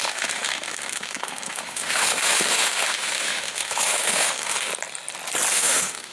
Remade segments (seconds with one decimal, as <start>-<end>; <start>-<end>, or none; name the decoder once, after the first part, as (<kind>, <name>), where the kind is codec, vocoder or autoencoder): 0.0-4.7 (autoencoder, DAC-VAE); 5.5-6.1